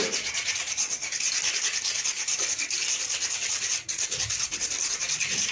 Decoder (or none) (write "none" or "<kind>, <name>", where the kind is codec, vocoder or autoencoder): vocoder, BigVGAN v2